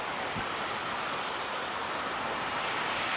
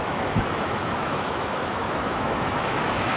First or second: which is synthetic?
second